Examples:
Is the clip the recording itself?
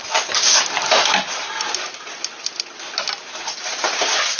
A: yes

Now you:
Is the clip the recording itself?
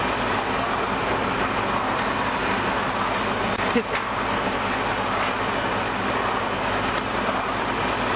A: yes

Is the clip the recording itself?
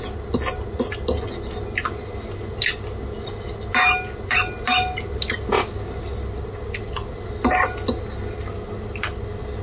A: yes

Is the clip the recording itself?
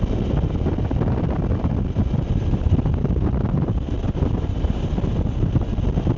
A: yes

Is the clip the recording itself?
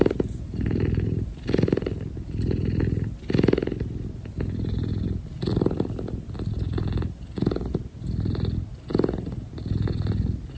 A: yes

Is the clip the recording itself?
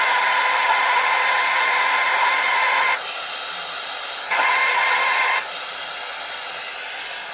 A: yes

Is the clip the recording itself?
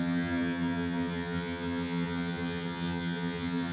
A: no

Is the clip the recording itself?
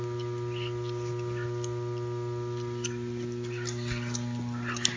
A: yes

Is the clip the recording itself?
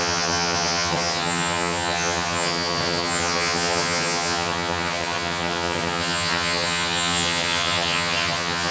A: no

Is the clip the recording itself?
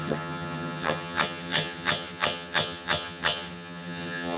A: no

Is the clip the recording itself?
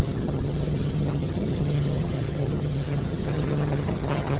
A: no